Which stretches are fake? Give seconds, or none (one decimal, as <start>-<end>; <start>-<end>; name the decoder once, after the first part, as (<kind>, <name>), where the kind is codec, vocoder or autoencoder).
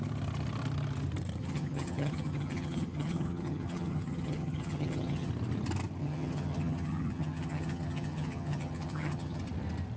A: 1.4-5.3 (vocoder, HiFi-GAN); 6.0-9.4